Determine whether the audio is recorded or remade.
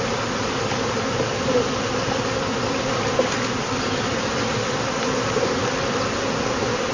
recorded